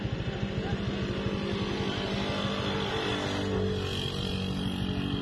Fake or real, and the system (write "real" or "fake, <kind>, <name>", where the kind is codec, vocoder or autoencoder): real